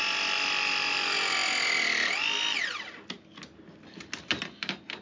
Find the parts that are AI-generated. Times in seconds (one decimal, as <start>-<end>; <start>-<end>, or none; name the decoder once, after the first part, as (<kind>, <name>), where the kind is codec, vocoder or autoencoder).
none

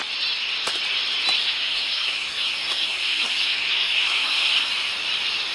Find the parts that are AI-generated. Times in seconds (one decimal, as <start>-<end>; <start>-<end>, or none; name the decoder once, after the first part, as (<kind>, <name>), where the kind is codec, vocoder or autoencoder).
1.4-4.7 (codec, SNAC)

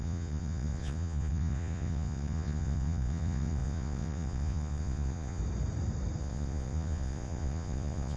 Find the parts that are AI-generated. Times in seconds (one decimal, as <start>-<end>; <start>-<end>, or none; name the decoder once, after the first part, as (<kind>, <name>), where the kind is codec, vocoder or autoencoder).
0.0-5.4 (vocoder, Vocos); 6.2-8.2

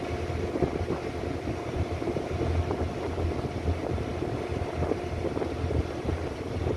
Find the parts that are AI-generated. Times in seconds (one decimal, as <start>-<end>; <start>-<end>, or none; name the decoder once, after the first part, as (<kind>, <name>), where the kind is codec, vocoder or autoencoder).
none

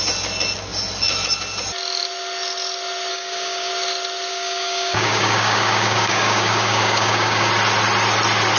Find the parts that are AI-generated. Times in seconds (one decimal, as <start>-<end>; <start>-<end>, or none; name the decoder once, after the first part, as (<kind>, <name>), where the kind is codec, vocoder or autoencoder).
3.1-3.7 (codec, DAC); 4.3-7.5

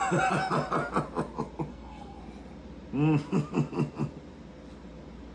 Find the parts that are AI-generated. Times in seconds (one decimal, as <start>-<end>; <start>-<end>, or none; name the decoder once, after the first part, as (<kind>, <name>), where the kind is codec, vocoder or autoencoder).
1.7-2.2 (codec, SNAC)

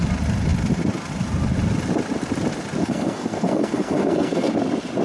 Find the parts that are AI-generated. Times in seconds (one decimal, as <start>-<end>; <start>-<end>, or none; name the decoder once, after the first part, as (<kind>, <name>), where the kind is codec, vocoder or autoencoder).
2.8-4.5 (codec, SNAC)